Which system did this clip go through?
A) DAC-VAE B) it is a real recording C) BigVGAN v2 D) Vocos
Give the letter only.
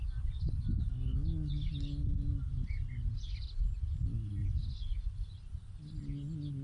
B